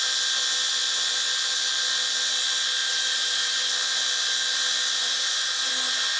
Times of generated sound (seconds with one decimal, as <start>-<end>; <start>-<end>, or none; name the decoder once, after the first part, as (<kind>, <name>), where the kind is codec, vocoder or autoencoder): 2.8-3.7 (vocoder, BigVGAN v2); 5.0-5.7